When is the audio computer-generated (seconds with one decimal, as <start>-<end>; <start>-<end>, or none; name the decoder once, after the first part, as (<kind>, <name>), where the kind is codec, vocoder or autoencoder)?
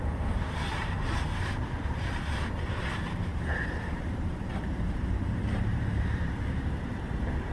0.0-7.5 (vocoder, BigVGAN v2)